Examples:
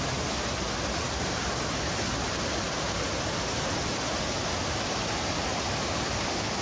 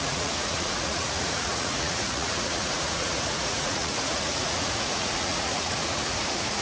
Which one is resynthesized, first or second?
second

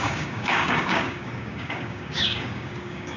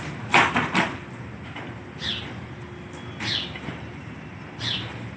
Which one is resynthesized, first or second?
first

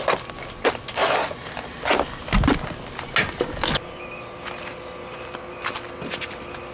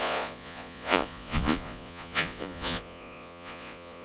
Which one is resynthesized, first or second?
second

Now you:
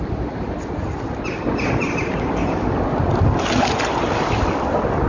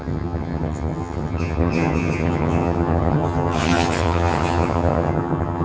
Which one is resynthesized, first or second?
second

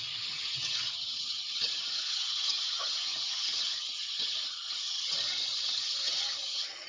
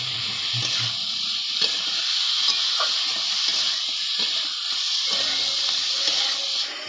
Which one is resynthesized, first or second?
first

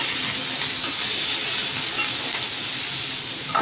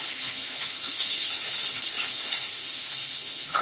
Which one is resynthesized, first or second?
second